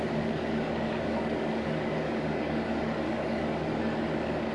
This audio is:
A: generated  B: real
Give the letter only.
A